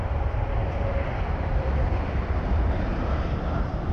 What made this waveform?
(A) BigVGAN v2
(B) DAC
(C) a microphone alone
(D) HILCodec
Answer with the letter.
A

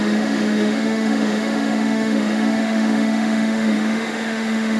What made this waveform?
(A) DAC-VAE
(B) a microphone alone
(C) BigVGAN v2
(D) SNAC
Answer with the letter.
A